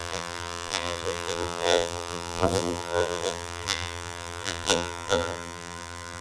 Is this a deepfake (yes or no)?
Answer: yes